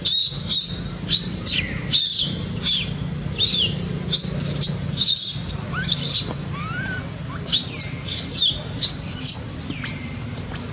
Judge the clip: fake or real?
real